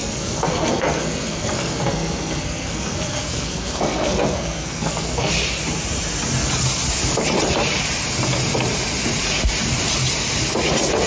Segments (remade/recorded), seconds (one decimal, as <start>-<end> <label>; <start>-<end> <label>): 0.0-5.3 remade; 5.3-11.1 recorded